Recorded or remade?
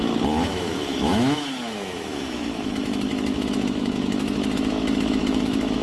remade